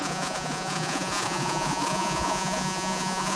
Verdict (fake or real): fake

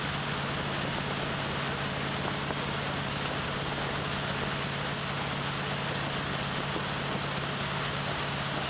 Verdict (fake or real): real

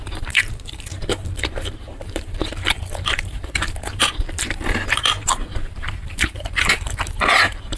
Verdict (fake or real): fake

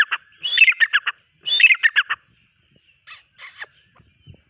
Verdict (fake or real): real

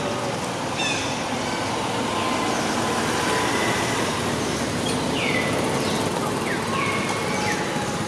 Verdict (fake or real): real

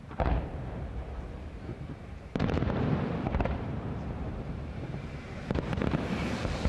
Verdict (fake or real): fake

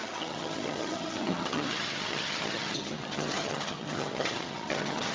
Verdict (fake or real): fake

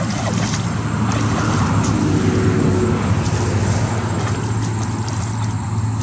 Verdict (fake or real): real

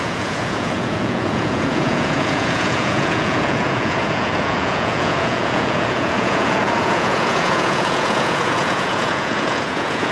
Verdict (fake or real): fake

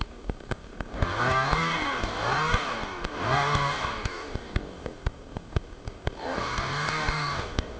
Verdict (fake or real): fake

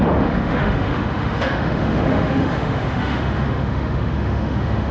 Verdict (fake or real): fake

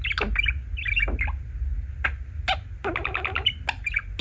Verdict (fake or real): real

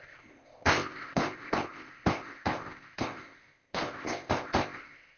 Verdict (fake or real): fake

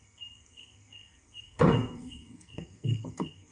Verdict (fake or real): fake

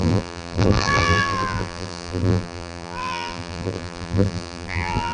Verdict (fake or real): fake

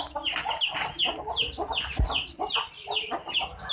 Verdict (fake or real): real